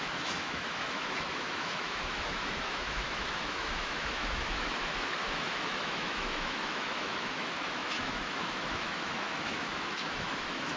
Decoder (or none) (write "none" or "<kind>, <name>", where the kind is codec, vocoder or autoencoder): autoencoder, DAC-VAE